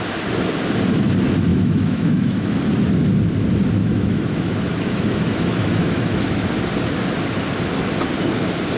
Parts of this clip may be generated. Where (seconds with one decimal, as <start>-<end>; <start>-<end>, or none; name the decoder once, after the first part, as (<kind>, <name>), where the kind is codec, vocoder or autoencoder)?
1.5-2.6 (autoencoder, DAC-VAE); 3.8-6.4